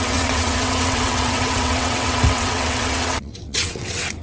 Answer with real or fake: fake